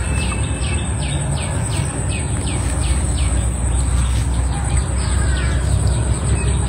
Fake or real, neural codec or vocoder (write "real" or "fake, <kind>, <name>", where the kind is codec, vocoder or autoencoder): real